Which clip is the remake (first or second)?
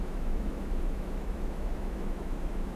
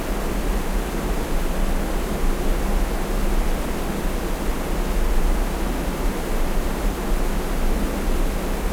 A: first